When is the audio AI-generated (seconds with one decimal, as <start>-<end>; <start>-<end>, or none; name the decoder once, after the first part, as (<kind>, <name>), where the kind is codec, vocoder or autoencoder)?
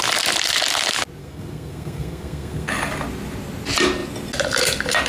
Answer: 1.2-2.7 (codec, SNAC)